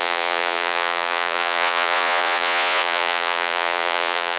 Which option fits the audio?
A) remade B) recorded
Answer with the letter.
A